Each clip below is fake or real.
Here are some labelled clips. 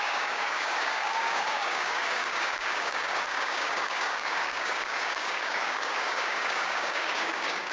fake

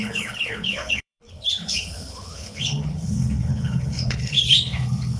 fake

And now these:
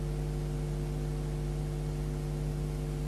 real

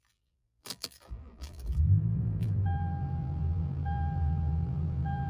fake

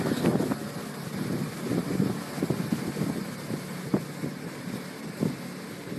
real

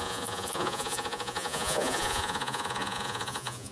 fake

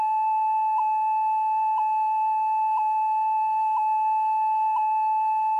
fake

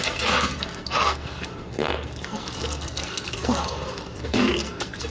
fake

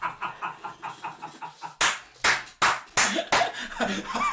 real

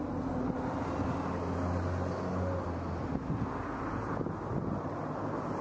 real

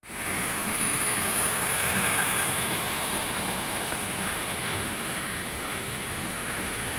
fake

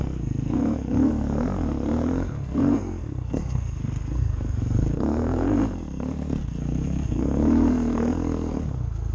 fake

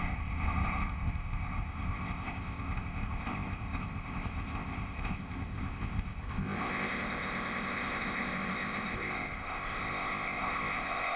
fake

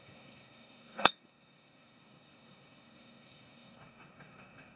fake